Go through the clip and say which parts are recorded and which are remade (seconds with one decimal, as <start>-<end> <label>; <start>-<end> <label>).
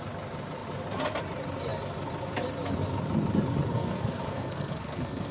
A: 0.0-3.7 recorded; 3.7-5.3 remade